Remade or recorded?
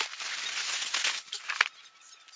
recorded